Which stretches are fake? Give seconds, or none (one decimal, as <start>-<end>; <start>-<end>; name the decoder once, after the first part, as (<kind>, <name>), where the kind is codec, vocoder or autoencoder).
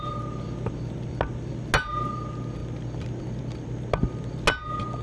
none